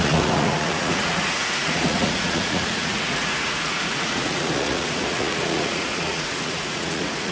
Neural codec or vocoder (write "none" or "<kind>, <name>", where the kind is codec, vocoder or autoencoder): vocoder, Vocos